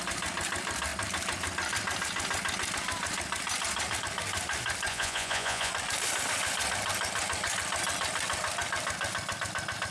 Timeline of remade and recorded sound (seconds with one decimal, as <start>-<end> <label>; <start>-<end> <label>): 0.0-4.9 recorded; 4.9-5.7 remade; 5.7-9.9 recorded